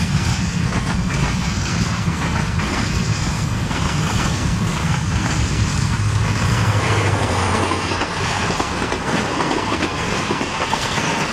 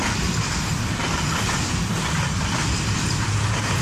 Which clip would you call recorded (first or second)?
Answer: second